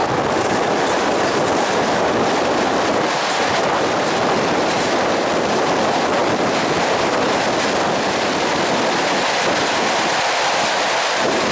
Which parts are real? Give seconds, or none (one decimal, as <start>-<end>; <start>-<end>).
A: 0.0-11.5